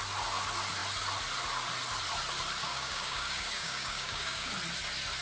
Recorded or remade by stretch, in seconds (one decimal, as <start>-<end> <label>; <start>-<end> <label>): 0.0-2.7 recorded; 2.7-4.5 remade; 4.5-5.2 recorded